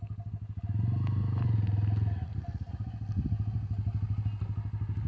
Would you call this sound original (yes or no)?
yes